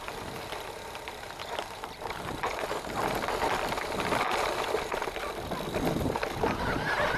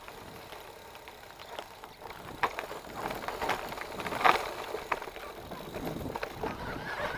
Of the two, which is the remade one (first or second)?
first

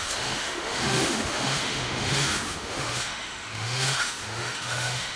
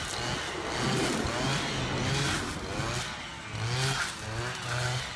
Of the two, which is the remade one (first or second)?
first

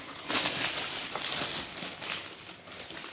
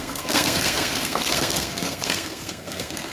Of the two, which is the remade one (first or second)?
second